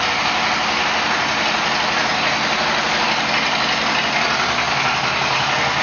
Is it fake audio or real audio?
real